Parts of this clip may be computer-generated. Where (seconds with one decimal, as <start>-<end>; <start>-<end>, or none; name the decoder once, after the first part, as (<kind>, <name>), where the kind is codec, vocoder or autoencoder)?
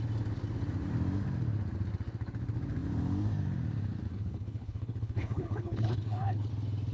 4.1-6.5 (codec, HILCodec)